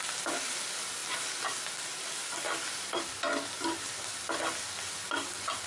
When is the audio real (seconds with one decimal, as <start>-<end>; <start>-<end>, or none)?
0.0-5.7